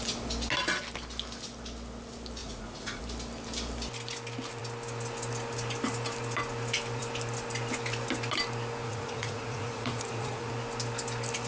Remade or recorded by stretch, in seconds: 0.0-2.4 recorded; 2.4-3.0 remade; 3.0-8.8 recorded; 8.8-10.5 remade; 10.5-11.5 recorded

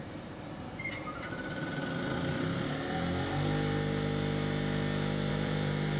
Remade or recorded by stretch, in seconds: 0.0-1.8 remade; 1.8-5.3 recorded; 5.3-6.0 remade